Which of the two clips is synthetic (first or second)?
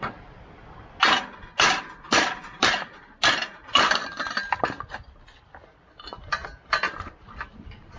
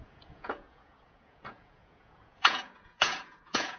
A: second